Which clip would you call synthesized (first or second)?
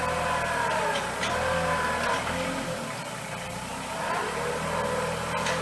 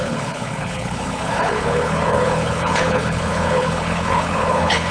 second